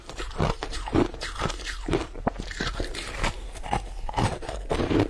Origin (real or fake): fake